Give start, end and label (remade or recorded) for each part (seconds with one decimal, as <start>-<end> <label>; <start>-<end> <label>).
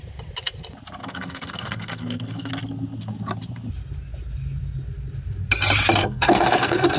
0.0-1.0 recorded; 1.0-2.5 remade; 2.5-6.0 recorded; 6.0-7.0 remade